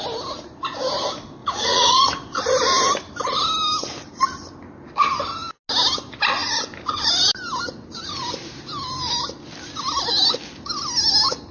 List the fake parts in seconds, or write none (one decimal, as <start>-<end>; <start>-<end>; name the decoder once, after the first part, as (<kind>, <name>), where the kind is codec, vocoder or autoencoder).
1.4-2.3 (vocoder, Vocos)